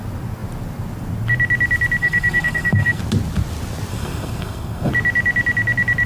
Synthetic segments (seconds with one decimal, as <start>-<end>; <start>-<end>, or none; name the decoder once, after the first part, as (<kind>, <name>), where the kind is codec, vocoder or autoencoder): 2.0-3.0 (codec, SNAC); 3.9-4.9